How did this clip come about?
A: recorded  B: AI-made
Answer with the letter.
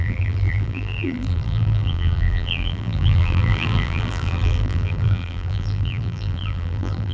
B